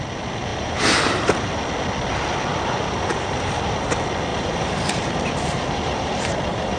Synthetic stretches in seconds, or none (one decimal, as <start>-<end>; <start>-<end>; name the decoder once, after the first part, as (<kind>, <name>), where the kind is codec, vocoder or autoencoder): 0.5-1.6 (vocoder, BigVGAN v2); 2.5-3.9; 4.3-6.8